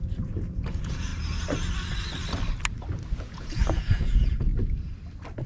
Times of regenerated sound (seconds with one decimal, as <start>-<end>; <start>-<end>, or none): 0.0-1.1; 3.2-4.5